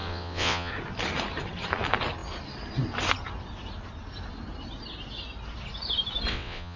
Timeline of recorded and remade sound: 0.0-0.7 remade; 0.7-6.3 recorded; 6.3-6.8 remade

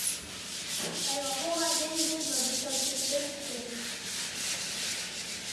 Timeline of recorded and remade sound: 0.0-2.9 recorded; 2.9-3.9 remade; 3.9-5.5 recorded